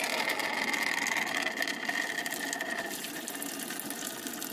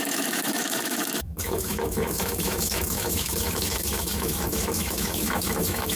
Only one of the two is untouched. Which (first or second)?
first